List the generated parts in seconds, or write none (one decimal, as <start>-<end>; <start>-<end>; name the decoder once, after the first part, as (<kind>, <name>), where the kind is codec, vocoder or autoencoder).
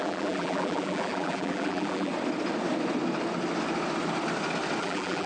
0.0-2.1 (vocoder, BigVGAN v2); 4.8-5.3